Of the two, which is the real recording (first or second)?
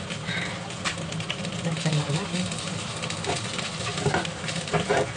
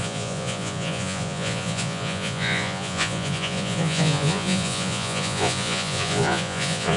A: first